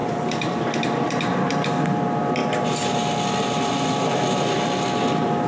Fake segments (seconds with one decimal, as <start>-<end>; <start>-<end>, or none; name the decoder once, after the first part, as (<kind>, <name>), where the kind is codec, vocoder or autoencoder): 0.0-0.6 (vocoder, BigVGAN v2)